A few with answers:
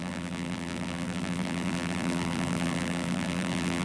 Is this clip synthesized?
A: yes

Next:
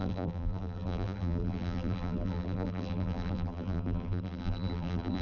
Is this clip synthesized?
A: yes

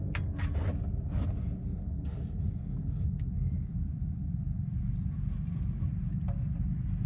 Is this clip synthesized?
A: no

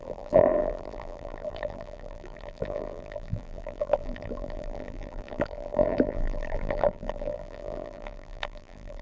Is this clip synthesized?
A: yes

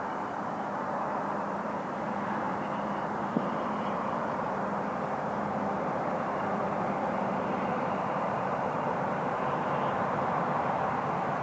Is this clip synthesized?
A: yes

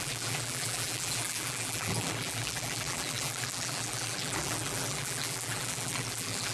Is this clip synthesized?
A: yes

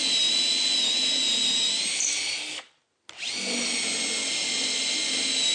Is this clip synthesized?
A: no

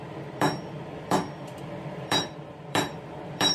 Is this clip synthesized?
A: yes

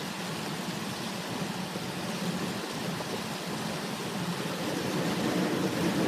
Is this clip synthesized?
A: no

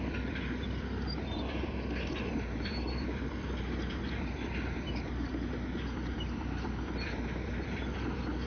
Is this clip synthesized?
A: yes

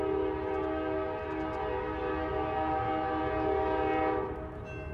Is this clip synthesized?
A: no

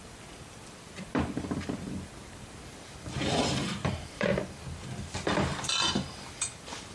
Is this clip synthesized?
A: yes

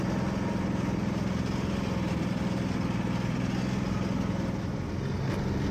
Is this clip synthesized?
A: no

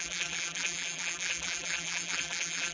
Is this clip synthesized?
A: yes